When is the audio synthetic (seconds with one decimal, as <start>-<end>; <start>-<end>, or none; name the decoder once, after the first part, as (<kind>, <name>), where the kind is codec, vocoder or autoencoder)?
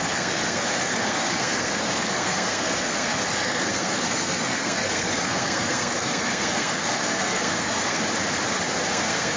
0.0-8.0 (codec, SNAC); 8.9-9.4